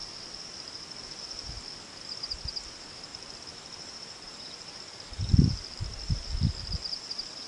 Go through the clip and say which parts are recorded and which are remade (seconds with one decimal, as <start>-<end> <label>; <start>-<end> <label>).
0.0-3.1 recorded; 3.1-4.8 remade; 4.8-7.5 recorded